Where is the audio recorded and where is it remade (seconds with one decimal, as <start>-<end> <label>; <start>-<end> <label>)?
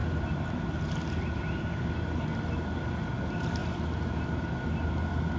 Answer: 0.0-5.4 recorded